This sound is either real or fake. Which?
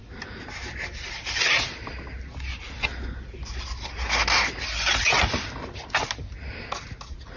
real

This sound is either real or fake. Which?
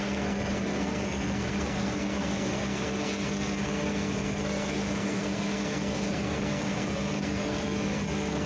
fake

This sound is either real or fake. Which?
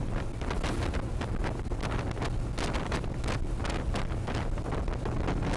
real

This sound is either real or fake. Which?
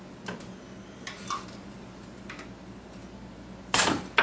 real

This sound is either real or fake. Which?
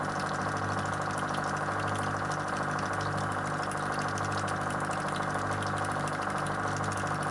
real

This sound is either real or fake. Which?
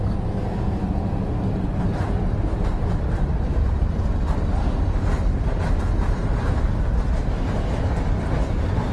real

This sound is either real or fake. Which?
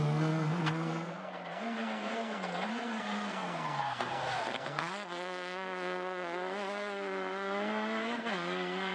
fake